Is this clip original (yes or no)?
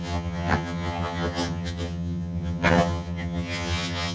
no